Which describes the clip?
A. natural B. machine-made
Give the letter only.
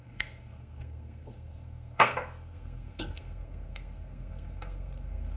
B